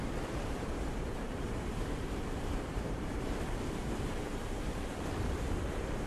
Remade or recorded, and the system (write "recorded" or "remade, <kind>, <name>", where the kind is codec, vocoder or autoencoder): remade, vocoder, BigVGAN v2